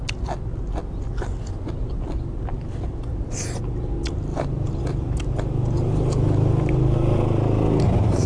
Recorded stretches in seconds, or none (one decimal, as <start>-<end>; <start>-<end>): 0.0-4.3; 6.0-8.3